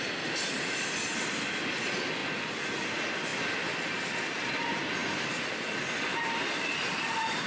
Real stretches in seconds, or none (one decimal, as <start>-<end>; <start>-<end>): 0.0-7.5